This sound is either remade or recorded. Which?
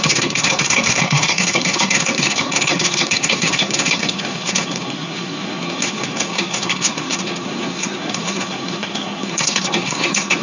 remade